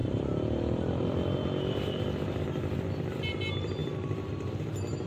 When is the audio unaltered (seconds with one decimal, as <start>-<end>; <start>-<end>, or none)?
3.1-5.1